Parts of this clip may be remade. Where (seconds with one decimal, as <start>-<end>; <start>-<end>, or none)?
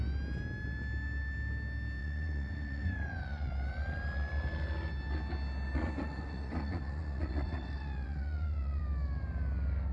2.0-3.5; 6.0-8.8